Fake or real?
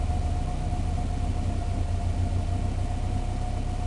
real